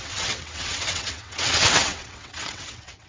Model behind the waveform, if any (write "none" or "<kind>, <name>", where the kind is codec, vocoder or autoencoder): vocoder, WaveNeXt